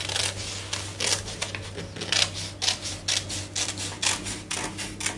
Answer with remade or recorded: recorded